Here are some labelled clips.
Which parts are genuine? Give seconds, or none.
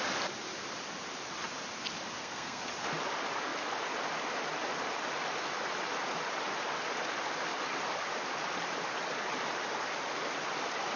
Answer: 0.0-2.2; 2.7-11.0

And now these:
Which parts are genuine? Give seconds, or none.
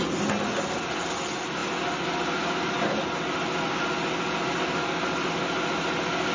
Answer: 0.0-6.3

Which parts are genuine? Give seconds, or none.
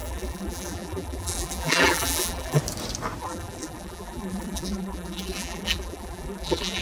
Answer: 2.6-3.2